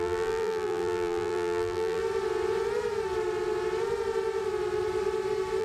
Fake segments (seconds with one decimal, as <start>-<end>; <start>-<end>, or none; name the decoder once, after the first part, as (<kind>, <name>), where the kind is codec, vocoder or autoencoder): 0.0-2.0 (vocoder, BigVGAN v2)